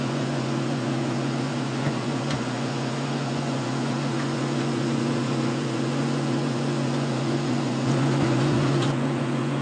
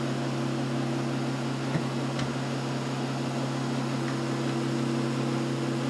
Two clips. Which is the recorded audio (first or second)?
second